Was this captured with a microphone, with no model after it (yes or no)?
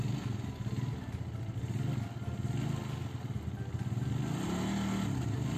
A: yes